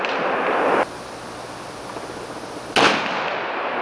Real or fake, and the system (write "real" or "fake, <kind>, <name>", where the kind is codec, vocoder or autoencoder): real